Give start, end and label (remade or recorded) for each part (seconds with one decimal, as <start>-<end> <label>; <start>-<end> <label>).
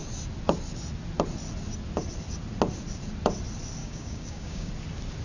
0.0-3.8 recorded; 3.8-4.7 remade; 4.7-5.2 recorded